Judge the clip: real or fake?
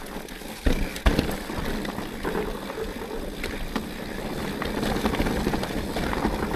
real